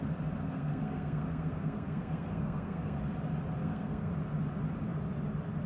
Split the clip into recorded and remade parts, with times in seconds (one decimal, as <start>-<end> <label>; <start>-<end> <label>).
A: 0.0-0.4 recorded; 0.4-3.0 remade; 3.0-3.6 recorded; 3.6-4.1 remade; 4.1-5.7 recorded